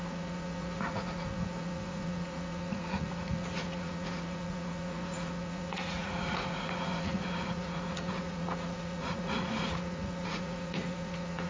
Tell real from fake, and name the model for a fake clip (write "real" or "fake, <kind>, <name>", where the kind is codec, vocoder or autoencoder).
fake, vocoder, Vocos